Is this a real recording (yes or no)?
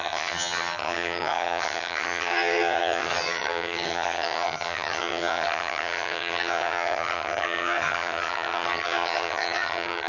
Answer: no